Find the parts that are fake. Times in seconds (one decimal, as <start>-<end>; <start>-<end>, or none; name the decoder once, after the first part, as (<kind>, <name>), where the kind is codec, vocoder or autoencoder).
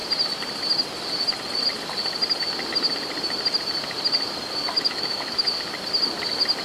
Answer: 4.7-5.5 (autoencoder, DAC-VAE)